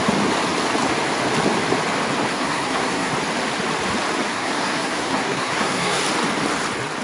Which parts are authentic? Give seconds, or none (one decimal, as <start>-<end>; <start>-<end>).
0.0-2.3; 3.1-4.3; 6.0-7.0